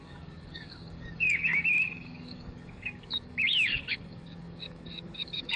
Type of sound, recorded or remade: remade